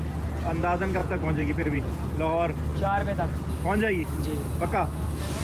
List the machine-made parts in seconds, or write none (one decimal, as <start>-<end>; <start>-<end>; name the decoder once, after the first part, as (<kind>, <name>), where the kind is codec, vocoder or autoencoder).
1.0-1.9 (vocoder, Vocos)